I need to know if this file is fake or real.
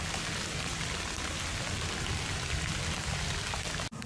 real